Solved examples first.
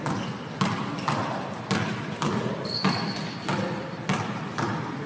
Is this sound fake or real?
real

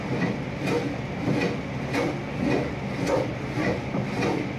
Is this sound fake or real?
real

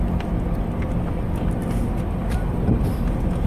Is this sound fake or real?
real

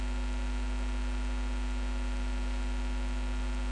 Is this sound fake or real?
real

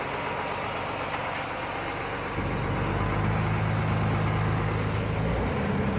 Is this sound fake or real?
real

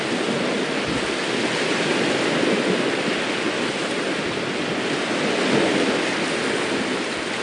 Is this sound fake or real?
real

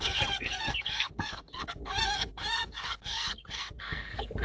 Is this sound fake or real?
fake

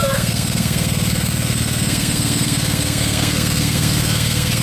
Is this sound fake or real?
fake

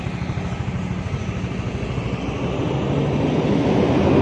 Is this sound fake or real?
real